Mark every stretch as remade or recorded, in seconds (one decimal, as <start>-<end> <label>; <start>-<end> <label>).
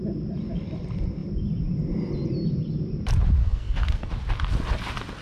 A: 0.0-3.4 recorded; 3.4-4.1 remade; 4.1-5.2 recorded